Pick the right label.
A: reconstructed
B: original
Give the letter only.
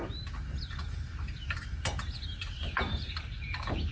A